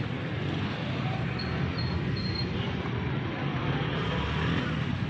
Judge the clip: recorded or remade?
recorded